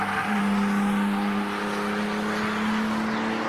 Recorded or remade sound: recorded